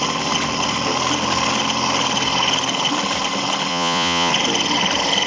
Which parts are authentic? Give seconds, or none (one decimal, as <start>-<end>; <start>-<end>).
0.0-3.7; 4.3-5.3